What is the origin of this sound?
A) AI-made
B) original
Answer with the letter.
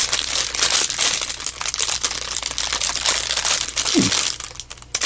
B